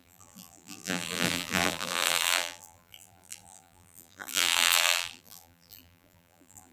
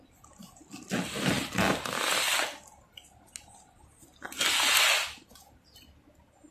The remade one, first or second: first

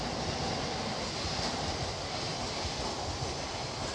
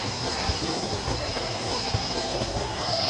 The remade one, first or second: second